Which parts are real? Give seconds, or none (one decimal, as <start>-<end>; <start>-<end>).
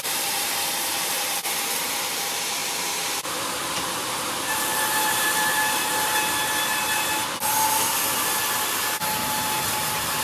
7.2-8.6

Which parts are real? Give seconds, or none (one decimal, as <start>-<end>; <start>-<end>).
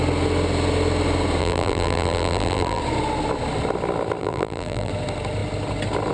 0.0-1.4; 2.8-4.2; 4.9-6.1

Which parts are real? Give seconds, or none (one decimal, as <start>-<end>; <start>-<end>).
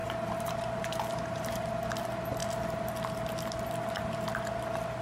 1.6-5.0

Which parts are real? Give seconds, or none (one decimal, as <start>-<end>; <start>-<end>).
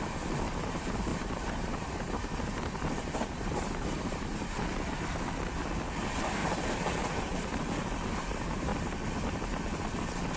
0.0-1.1; 4.4-6.4; 7.1-10.4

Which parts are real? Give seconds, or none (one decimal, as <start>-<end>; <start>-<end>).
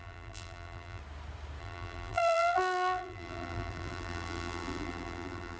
1.0-1.6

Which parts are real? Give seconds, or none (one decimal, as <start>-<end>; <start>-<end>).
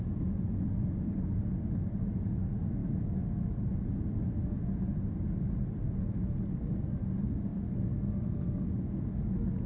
0.0-4.9; 7.0-9.7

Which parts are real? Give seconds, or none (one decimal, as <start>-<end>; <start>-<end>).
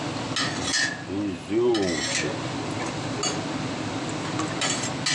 0.0-5.1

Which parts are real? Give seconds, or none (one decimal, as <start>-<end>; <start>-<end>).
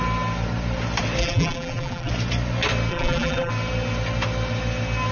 0.0-1.2; 2.1-2.9; 3.5-5.1